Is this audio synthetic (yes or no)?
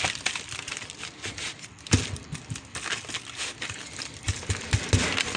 no